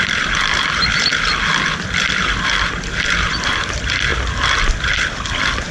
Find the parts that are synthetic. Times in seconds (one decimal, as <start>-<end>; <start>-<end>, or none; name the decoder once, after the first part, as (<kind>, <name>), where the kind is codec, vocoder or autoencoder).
0.0-1.1 (vocoder, BigVGAN v2); 3.3-4.1; 5.0-5.7